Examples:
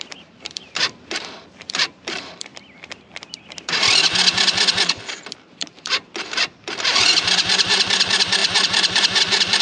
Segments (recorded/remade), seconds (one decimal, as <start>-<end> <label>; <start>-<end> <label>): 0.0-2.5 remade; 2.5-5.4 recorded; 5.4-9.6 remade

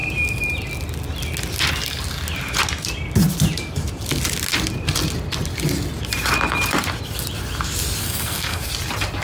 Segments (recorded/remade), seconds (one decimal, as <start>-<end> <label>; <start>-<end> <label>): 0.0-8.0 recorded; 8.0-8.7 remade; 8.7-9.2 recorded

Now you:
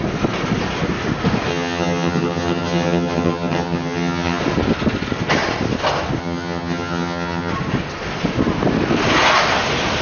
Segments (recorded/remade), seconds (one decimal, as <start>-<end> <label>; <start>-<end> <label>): 0.0-1.5 recorded; 1.5-4.4 remade; 4.4-6.2 recorded; 6.2-7.5 remade; 7.5-10.0 recorded

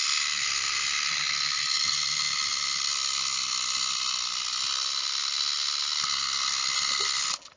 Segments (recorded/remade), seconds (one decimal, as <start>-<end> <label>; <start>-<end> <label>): 0.0-7.6 recorded